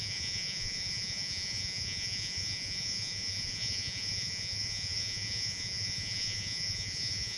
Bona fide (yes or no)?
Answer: no